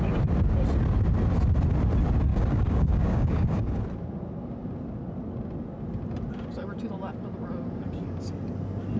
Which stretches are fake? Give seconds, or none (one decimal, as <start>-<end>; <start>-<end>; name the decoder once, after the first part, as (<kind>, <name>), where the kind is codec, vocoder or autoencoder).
2.3-3.8 (codec, DAC)

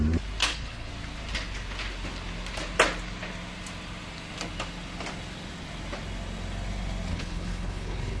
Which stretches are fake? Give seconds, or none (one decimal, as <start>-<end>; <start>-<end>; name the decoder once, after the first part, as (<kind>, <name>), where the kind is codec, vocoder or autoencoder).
0.4-0.9 (codec, HILCodec); 7.1-8.2

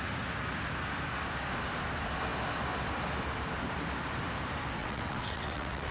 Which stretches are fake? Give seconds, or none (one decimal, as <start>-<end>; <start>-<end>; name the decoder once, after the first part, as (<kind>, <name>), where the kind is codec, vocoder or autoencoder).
4.8-5.9 (vocoder, WaveNeXt)